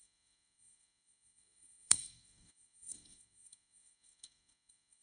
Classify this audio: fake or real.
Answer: fake